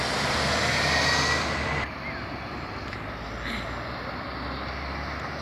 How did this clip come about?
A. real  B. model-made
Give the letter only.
A